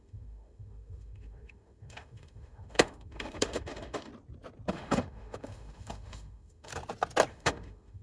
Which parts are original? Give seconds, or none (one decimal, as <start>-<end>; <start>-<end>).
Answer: 4.1-4.7; 6.7-7.3